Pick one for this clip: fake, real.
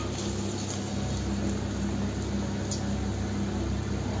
real